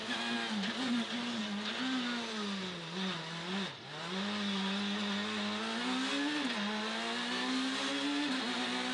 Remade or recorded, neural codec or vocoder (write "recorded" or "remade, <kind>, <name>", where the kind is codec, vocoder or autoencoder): recorded